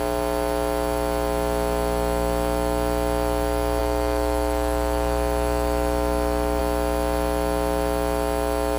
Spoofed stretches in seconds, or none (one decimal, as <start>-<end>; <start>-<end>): 3.8-6.6